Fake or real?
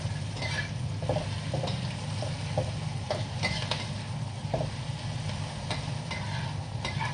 real